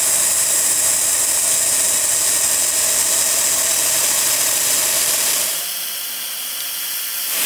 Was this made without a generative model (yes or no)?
yes